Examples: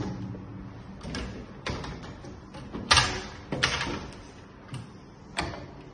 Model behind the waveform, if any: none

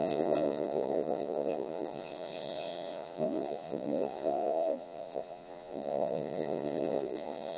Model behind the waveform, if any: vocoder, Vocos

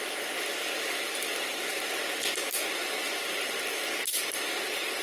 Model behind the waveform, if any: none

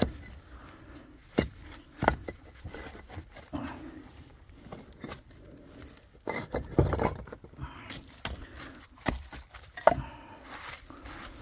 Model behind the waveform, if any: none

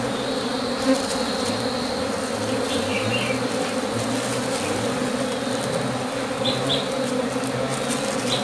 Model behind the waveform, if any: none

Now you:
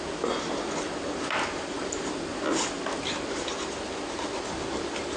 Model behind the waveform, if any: none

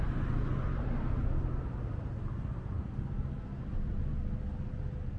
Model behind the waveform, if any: none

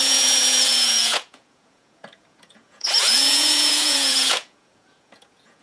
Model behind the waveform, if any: vocoder, Vocos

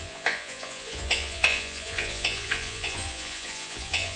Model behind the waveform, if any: vocoder, Vocos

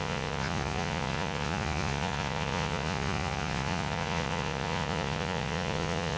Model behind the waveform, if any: vocoder, Vocos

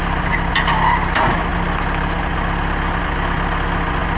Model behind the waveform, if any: none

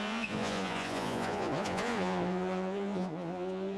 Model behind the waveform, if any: vocoder, Vocos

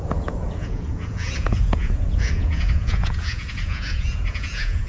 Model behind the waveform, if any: vocoder, Vocos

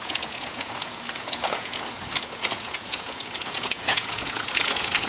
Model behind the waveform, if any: vocoder, Vocos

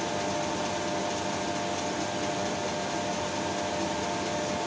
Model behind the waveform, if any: none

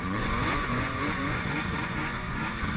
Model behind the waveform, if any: vocoder, Vocos